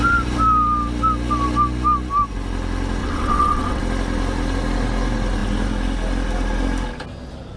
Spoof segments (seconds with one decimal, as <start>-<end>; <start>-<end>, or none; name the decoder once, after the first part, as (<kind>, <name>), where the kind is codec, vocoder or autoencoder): 3.0-3.8 (vocoder, WaveNeXt)